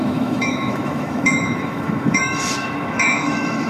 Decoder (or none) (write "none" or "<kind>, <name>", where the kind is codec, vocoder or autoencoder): autoencoder, DAC-VAE